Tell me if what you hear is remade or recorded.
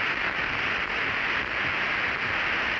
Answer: recorded